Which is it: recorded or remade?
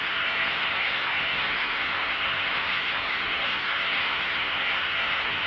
remade